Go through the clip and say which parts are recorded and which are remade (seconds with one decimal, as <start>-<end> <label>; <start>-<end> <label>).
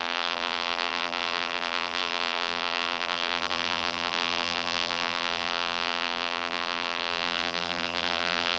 0.0-8.6 remade